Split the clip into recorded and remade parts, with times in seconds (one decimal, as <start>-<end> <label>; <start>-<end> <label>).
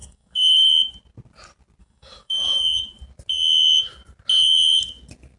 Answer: 0.0-0.7 remade; 0.7-1.8 recorded; 1.8-2.6 remade; 2.6-5.4 recorded